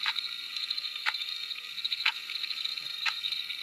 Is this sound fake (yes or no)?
yes